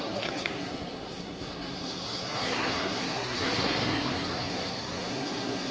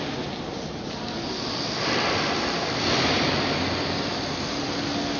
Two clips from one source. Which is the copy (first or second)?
first